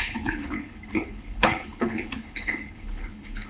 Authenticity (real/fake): fake